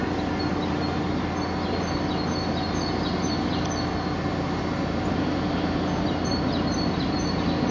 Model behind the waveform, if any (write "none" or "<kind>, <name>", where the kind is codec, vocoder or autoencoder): none